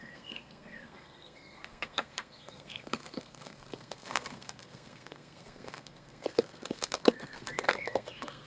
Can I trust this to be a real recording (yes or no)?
no